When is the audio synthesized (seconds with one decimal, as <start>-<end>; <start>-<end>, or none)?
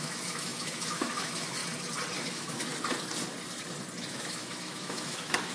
0.0-1.6; 2.2-2.7; 4.1-5.5